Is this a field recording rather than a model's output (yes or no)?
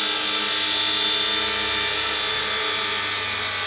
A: yes